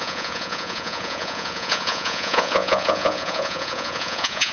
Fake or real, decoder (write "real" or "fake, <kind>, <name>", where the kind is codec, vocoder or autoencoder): fake, vocoder, Vocos